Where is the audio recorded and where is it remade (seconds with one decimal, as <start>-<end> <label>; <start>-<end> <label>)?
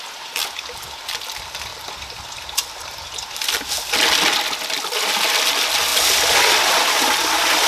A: 0.0-1.7 recorded; 1.7-3.7 remade; 3.7-5.9 recorded; 5.9-7.7 remade